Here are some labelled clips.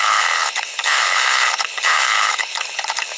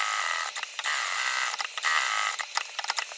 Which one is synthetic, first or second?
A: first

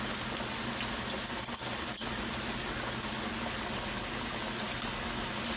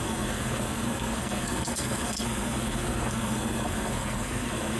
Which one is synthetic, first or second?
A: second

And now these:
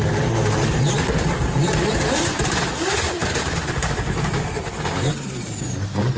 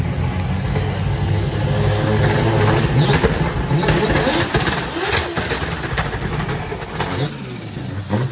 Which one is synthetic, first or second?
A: first